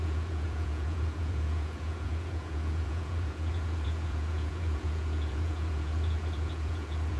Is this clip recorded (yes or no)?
no